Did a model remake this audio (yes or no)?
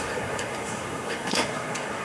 yes